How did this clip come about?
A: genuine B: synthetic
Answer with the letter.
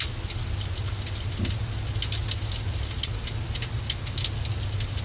A